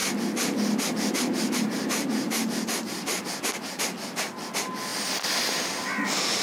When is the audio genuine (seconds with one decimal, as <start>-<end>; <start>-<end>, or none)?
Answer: 0.0-6.4